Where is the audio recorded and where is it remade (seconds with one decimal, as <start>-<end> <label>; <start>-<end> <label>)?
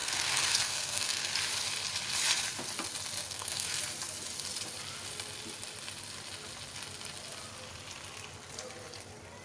0.0-1.3 remade; 1.3-3.2 recorded; 3.2-3.8 remade; 3.8-9.4 recorded